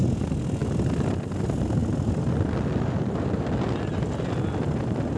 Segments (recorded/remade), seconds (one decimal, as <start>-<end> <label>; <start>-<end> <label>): 0.0-5.2 recorded